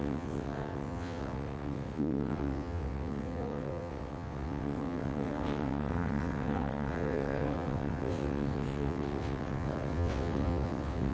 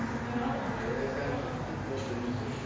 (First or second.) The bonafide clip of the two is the second